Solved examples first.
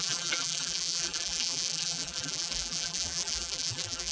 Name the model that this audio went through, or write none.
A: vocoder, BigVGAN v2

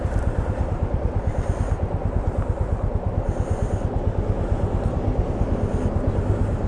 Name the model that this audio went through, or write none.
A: none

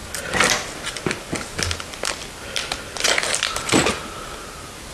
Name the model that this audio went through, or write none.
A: none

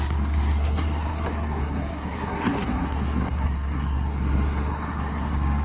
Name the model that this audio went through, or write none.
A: codec, SNAC